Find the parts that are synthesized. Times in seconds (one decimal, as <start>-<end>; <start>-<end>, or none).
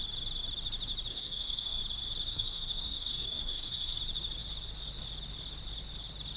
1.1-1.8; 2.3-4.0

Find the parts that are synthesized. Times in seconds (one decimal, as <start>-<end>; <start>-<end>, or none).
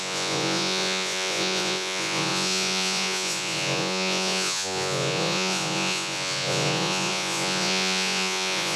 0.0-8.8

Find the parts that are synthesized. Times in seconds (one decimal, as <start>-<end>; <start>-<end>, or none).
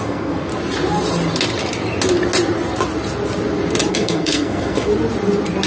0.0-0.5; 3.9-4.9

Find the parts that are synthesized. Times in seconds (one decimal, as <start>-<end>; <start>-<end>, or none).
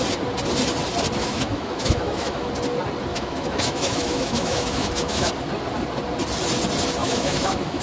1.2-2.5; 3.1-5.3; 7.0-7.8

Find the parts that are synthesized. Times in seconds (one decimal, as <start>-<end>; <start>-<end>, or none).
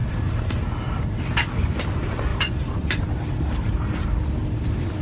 0.0-1.2; 2.3-3.0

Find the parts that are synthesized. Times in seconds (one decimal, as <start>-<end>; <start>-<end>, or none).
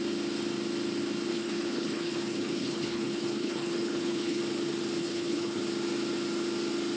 1.3-4.4; 5.0-5.6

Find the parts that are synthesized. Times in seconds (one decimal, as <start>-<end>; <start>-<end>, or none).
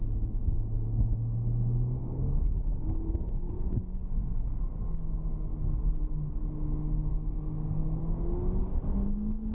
2.0-4.7; 7.1-8.0; 8.6-9.5